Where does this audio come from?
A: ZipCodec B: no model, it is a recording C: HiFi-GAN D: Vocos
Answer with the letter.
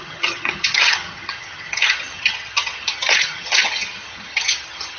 C